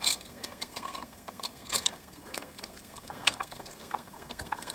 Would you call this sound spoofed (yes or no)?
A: yes